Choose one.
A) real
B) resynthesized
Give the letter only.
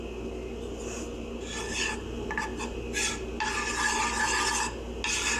A